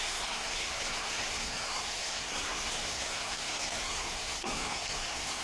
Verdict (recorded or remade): remade